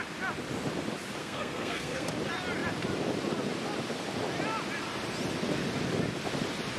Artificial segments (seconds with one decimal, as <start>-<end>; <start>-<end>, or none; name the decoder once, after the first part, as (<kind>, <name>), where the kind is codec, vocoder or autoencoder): 1.2-2.1 (codec, SNAC)